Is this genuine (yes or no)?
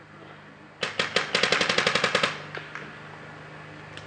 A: yes